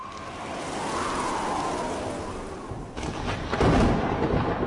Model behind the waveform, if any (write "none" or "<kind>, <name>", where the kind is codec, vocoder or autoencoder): none